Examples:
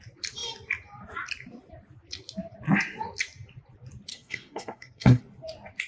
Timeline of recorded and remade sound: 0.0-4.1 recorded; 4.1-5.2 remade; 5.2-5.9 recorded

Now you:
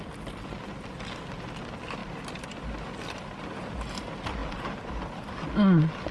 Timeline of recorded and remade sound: 0.0-6.1 recorded

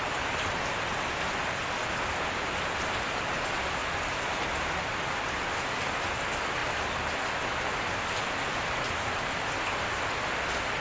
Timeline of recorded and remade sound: 0.0-10.8 recorded

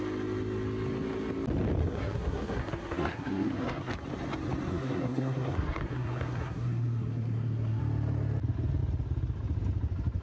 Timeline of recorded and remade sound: 0.0-1.8 recorded; 1.8-3.9 remade; 3.9-4.7 recorded; 4.7-7.8 remade; 7.8-10.2 recorded

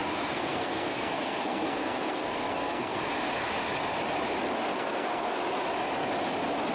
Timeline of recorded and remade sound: 0.0-3.0 remade; 3.0-4.7 recorded; 4.7-5.4 remade; 5.4-6.7 recorded

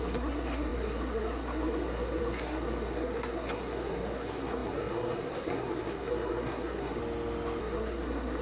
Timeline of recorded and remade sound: 0.0-7.0 remade; 7.0-7.6 recorded; 7.6-8.4 remade

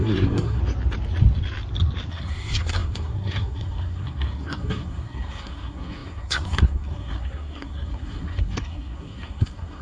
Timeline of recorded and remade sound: 0.0-0.6 remade; 0.6-2.1 recorded; 2.1-9.8 remade

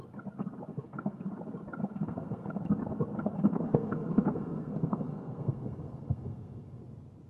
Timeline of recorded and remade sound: 0.0-0.7 recorded; 0.7-1.3 remade; 1.3-1.8 recorded; 1.8-2.6 remade; 2.6-3.2 recorded; 3.2-6.8 remade; 6.8-7.3 recorded